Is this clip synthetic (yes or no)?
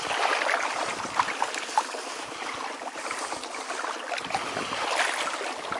no